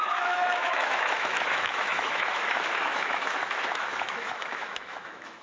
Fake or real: fake